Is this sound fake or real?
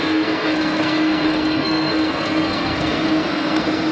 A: fake